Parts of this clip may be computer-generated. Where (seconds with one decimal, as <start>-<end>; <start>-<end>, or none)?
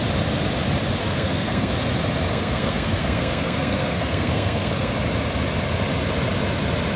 1.0-1.7; 2.3-4.9